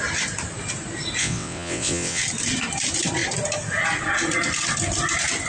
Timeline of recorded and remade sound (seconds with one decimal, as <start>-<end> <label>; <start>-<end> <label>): 0.0-1.2 recorded; 1.2-2.2 remade; 2.2-5.5 recorded